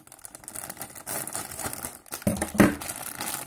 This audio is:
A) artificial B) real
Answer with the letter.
B